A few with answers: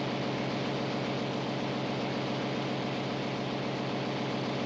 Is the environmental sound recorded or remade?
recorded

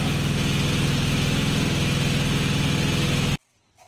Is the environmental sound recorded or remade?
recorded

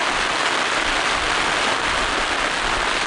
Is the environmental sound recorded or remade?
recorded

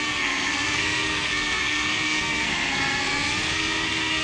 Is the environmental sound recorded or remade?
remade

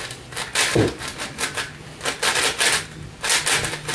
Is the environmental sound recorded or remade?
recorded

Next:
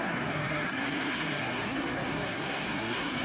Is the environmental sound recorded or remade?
remade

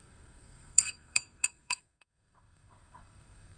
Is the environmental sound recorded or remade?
remade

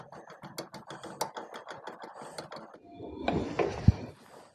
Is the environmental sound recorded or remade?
recorded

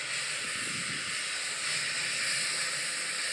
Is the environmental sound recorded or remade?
recorded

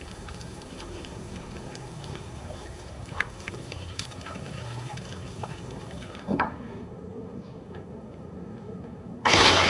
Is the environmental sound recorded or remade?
remade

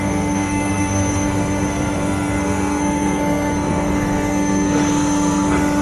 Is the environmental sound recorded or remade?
remade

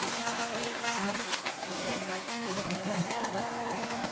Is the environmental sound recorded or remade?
remade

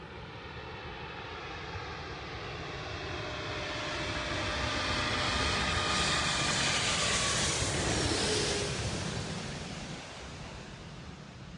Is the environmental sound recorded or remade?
recorded